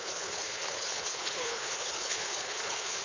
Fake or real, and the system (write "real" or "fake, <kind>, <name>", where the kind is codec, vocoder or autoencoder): fake, codec, HILCodec